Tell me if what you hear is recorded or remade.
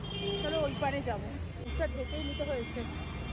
recorded